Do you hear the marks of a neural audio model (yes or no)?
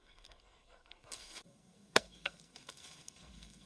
yes